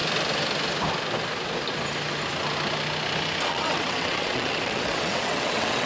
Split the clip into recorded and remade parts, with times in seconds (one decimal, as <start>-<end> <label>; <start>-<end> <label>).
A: 0.0-3.5 recorded; 3.5-5.9 remade